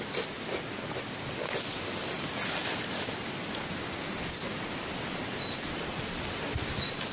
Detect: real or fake real